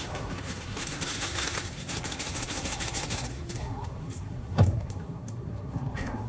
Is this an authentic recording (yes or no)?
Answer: no